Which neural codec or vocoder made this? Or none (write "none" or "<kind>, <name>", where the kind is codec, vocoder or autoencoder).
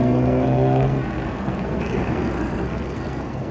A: codec, SNAC